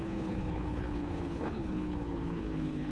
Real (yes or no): no